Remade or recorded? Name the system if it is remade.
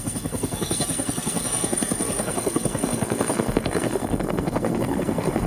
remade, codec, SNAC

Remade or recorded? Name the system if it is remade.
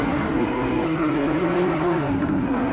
remade, codec, SNAC